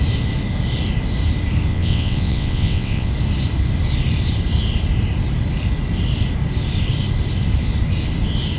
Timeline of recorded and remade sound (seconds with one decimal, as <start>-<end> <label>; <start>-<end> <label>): 0.0-1.7 recorded; 1.7-3.1 remade; 3.1-8.6 recorded